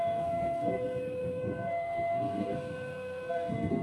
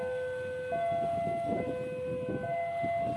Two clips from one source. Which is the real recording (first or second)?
second